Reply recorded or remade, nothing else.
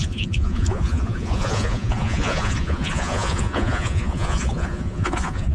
remade